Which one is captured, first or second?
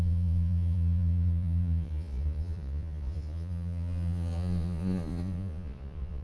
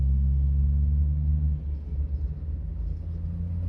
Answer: second